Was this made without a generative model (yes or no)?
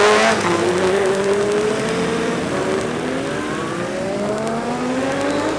yes